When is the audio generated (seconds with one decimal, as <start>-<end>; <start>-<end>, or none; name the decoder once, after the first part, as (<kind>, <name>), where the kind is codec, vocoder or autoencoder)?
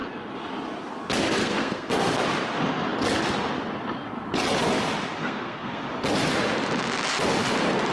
1.4-1.9 (codec, SNAC); 5.2-5.9